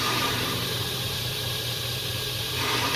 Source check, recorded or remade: remade